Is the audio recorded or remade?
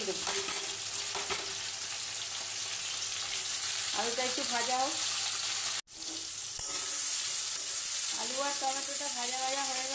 recorded